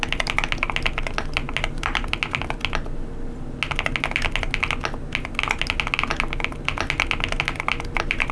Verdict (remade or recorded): recorded